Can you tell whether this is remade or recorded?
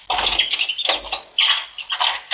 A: recorded